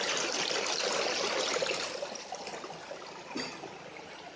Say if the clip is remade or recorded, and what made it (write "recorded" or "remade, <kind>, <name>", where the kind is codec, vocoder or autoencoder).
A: recorded